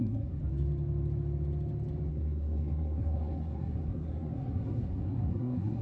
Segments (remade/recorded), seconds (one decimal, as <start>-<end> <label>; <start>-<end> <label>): 0.0-0.4 remade; 0.4-2.1 recorded; 2.1-5.8 remade